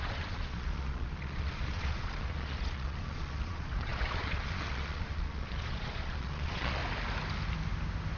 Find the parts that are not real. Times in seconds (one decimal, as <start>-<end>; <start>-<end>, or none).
0.0-6.8